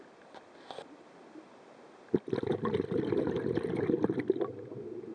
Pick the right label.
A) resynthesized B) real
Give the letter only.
B